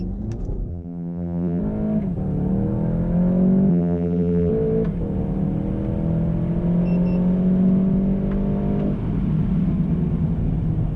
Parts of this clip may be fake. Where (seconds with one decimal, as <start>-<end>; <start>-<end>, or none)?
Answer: 0.7-1.6; 3.7-4.5